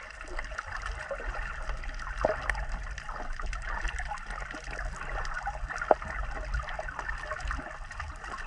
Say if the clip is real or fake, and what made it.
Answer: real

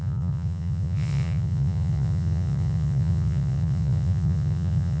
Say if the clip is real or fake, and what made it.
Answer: fake, vocoder, Vocos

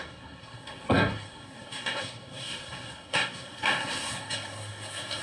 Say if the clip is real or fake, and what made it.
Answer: fake, codec, SNAC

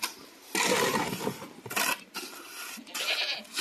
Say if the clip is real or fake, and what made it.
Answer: real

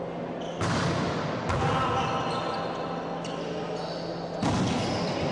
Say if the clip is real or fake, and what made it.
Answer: real